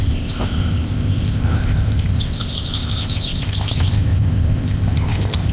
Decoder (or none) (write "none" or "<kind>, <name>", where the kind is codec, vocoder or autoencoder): codec, ZipCodec